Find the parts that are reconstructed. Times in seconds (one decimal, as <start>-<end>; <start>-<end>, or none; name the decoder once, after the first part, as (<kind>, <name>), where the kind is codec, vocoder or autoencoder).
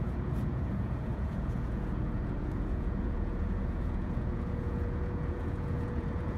0.0-6.4 (vocoder, Vocos)